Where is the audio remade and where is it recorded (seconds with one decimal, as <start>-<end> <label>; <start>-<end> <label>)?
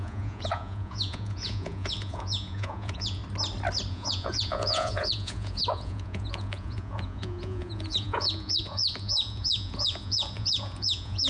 0.0-3.2 remade; 3.2-3.9 recorded; 3.9-11.3 remade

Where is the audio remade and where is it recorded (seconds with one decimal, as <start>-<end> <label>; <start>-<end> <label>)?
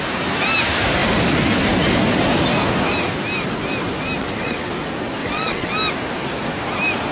0.0-4.2 recorded; 4.2-4.7 remade; 4.7-5.2 recorded; 5.2-5.7 remade; 5.7-7.1 recorded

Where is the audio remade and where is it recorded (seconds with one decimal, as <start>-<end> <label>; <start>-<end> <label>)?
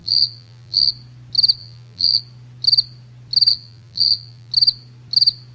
0.0-0.9 remade; 0.9-1.6 recorded; 1.6-2.2 remade; 2.2-3.5 recorded; 3.5-4.5 remade; 4.5-5.5 recorded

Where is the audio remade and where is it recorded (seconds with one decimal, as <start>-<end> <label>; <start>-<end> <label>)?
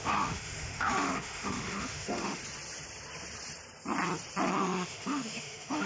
0.0-2.4 remade; 2.4-4.5 recorded; 4.5-5.9 remade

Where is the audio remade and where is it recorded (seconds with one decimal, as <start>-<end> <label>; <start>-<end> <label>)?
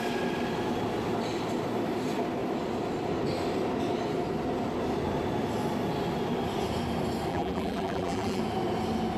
0.0-7.3 recorded; 7.3-8.4 remade; 8.4-9.2 recorded